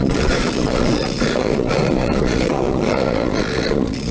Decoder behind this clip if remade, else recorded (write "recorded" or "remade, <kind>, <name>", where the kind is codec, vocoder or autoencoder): remade, vocoder, Vocos